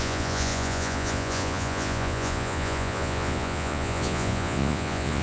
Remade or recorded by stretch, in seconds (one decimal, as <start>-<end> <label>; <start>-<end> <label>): 0.0-5.2 remade